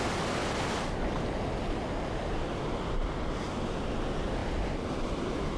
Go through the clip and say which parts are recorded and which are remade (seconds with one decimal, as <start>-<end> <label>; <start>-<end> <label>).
0.0-5.6 recorded